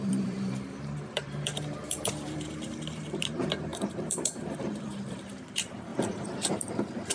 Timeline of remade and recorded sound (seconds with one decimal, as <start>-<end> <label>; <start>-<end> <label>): 0.0-5.9 remade; 5.9-6.6 recorded; 6.6-7.1 remade